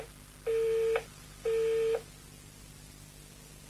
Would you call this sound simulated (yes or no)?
no